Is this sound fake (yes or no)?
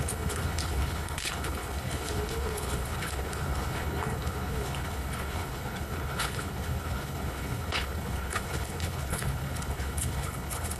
yes